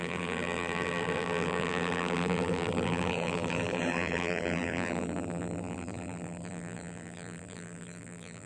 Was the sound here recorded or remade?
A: remade